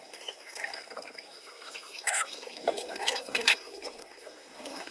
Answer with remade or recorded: remade